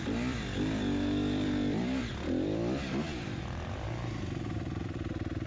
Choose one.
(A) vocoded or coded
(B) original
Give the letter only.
A